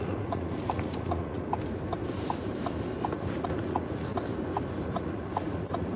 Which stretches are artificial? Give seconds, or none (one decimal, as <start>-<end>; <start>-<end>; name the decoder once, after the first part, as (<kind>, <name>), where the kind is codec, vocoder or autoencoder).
0.0-1.5 (vocoder, Vocos); 3.1-4.1; 4.7-6.0